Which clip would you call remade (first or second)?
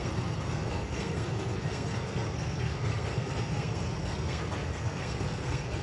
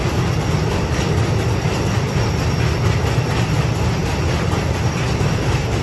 first